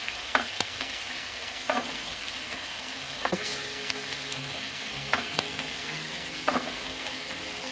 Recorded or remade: remade